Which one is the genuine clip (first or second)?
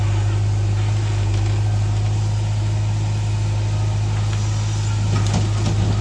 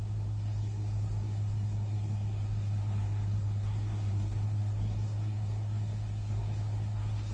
first